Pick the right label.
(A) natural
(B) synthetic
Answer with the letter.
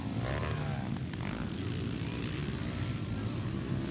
A